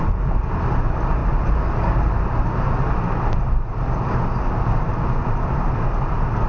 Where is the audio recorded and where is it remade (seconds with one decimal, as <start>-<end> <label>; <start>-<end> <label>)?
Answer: 0.0-6.5 recorded